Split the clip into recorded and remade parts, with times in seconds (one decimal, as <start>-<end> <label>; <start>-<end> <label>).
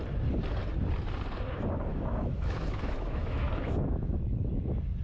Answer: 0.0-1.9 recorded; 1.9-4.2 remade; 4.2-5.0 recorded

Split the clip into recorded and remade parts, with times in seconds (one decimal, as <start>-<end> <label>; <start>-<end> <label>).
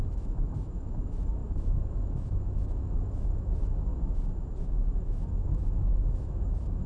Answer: 0.0-3.9 remade; 3.9-4.6 recorded; 4.6-6.9 remade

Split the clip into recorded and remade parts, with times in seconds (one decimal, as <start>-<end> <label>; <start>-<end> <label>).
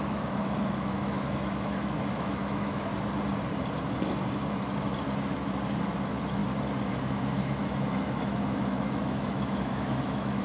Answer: 0.0-2.9 remade; 2.9-6.0 recorded; 6.0-6.4 remade; 6.4-6.9 recorded; 6.9-10.4 remade